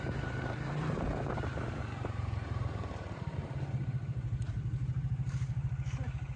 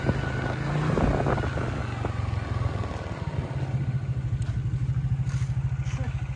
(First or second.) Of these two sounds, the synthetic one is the first